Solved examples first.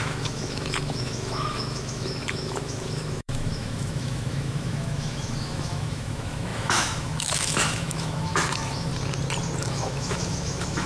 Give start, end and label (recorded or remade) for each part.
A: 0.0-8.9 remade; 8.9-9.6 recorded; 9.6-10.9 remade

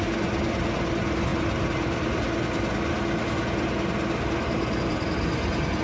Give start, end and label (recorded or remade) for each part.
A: 0.0-5.8 recorded

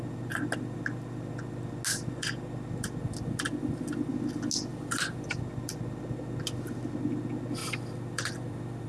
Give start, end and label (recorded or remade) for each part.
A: 0.0-3.0 recorded; 3.0-4.1 remade; 4.1-4.7 recorded; 4.7-5.4 remade; 5.4-7.6 recorded; 7.6-8.9 remade

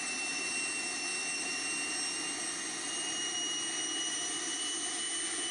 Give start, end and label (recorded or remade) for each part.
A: 0.0-5.5 recorded